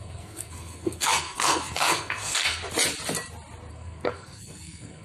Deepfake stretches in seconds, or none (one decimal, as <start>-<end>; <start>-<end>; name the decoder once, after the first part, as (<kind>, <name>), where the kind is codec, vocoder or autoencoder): 0.0-2.6 (codec, SNAC); 3.7-5.0